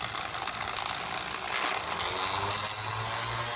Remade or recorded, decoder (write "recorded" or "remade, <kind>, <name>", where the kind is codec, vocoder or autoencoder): recorded